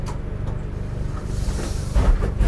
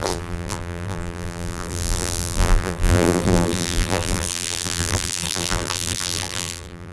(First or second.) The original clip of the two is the first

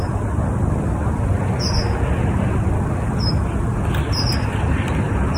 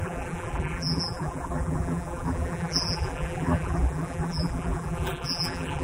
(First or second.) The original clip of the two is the first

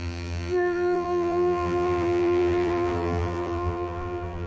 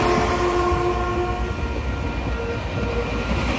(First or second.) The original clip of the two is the second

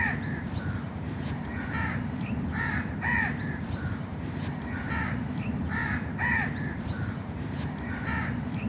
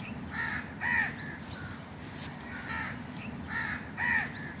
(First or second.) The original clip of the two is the second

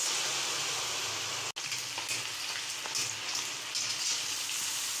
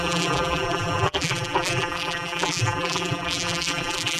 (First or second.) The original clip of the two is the first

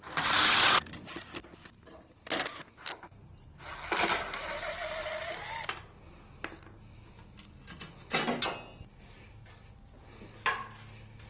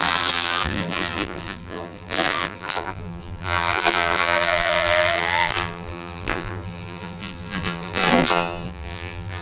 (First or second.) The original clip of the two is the first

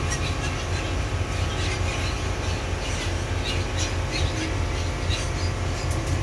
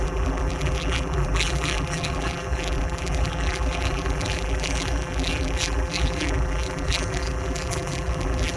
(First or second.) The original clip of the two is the first